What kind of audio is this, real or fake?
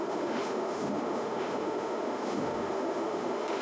fake